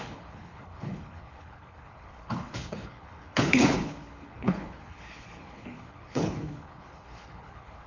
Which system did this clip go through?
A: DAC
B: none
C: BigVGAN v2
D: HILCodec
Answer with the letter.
D